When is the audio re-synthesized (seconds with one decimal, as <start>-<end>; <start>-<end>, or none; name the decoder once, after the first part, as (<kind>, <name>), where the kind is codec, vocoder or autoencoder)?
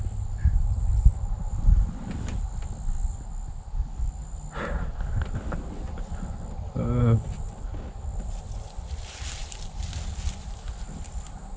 none